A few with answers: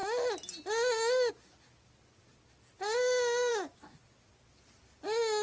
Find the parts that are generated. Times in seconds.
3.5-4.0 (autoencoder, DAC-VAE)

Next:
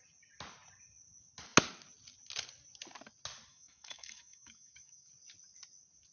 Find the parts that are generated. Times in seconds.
3.5-5.1 (autoencoder, DAC-VAE)

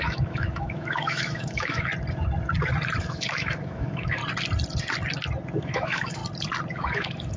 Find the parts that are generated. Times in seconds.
0.0-1.9 (autoencoder, DAC-VAE); 3.0-4.2; 5.6-6.2; 6.7-7.4

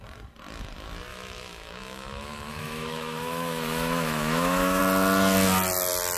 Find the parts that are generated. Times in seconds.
1.1-4.8 (autoencoder, DAC-VAE)

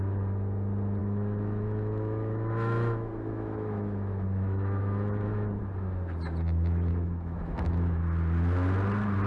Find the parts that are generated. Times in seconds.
1.0-5.6 (autoencoder, DAC-VAE); 6.9-8.0

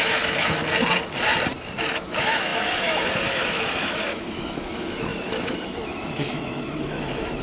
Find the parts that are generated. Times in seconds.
0.0-0.6 (autoencoder, DAC-VAE); 1.8-7.4